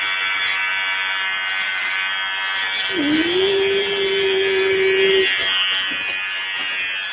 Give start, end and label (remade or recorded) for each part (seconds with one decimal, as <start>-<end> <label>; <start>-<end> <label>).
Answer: 0.0-7.1 recorded

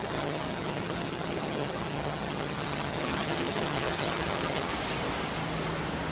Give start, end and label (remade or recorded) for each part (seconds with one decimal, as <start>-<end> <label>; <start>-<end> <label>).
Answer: 0.0-4.7 remade; 4.7-6.1 recorded

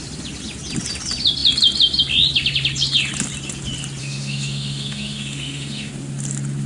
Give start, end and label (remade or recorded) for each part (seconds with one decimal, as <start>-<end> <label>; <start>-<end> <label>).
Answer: 0.0-4.0 recorded; 4.0-5.9 remade; 5.9-6.7 recorded

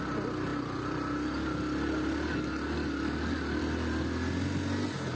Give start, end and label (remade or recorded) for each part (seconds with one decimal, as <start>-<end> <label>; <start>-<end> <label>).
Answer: 0.0-5.2 recorded

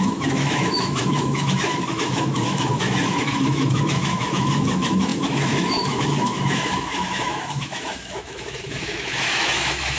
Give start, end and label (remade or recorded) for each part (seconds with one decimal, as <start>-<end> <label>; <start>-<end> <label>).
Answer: 0.0-10.0 remade